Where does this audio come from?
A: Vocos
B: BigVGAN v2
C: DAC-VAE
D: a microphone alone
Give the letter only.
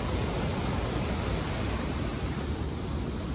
D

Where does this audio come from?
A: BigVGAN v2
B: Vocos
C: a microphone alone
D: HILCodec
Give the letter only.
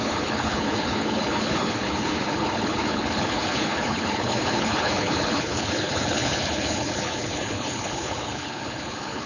D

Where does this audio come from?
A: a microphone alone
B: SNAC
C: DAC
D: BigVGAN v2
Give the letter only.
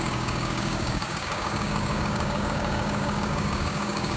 C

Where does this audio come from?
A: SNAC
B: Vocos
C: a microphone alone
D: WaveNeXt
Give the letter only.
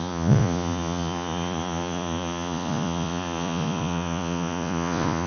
B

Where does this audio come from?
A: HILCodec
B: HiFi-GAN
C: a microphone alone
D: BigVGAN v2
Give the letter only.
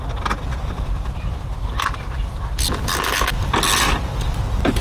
C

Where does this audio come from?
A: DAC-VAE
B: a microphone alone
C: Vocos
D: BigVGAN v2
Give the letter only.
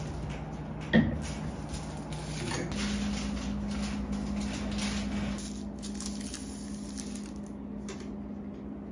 B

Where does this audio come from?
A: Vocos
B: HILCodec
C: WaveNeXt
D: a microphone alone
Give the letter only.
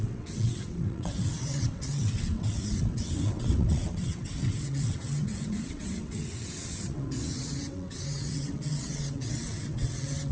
C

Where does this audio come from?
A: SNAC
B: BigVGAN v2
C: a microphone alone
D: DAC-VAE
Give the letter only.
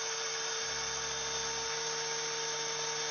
C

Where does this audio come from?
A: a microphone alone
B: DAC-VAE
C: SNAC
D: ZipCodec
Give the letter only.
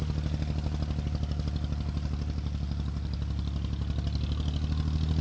A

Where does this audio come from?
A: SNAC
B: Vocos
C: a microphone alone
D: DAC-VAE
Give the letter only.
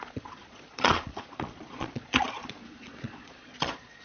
B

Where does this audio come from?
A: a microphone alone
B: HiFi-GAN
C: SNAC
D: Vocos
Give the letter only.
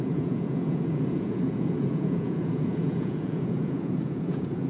D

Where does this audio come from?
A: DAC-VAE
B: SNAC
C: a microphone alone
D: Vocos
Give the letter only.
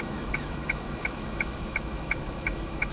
A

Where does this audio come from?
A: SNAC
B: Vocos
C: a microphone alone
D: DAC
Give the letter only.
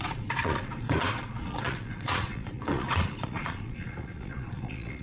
B